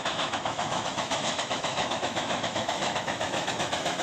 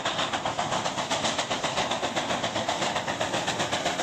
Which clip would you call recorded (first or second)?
second